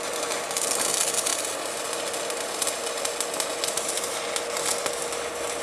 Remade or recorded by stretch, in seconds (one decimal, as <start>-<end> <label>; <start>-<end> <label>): 0.0-5.6 recorded